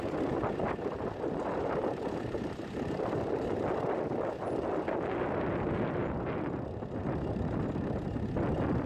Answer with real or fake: real